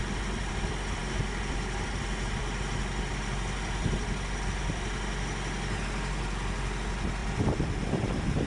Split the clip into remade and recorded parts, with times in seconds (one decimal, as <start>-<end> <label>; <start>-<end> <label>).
0.0-7.2 recorded; 7.2-8.5 remade